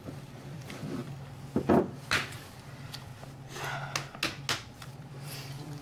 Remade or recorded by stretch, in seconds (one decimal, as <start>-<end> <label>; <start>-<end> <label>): 0.0-1.0 remade; 1.0-1.7 recorded; 1.7-3.1 remade; 3.1-4.9 recorded; 4.9-5.8 remade